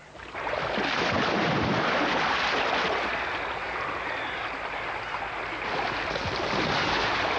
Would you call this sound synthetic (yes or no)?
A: no